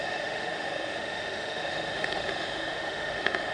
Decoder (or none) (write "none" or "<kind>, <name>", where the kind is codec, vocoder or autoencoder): autoencoder, DAC-VAE